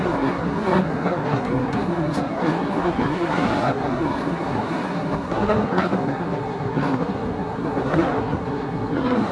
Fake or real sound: fake